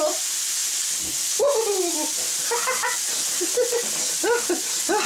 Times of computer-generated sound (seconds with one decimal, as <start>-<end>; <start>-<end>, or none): none